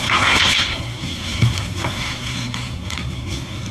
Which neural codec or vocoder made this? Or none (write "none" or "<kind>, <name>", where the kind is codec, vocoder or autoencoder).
codec, SNAC